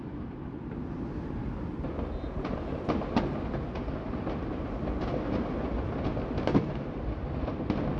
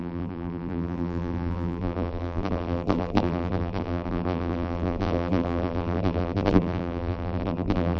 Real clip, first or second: first